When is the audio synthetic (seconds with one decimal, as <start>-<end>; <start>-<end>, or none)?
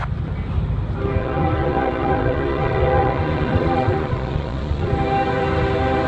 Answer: 1.2-4.9